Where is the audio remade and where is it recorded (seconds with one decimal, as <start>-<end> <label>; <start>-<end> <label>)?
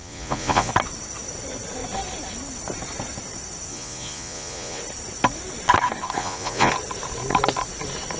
0.0-0.7 remade; 0.7-3.7 recorded; 3.7-4.8 remade; 4.8-6.2 recorded; 6.2-6.7 remade; 6.7-8.2 recorded